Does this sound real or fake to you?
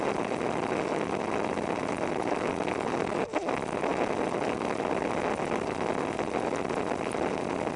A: real